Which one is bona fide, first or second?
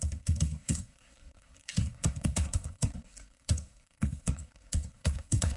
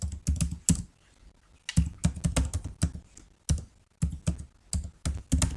second